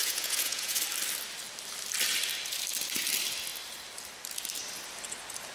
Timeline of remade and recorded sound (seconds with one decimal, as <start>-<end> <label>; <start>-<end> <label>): 0.0-0.8 remade; 0.8-5.5 recorded